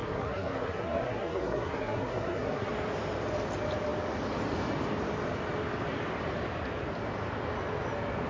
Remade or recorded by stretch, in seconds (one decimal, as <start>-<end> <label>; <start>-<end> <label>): 0.0-2.7 remade; 2.7-8.3 recorded